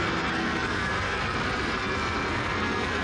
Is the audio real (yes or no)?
no